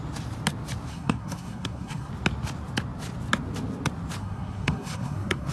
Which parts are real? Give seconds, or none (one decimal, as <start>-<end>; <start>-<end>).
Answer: 0.0-0.9; 2.1-4.2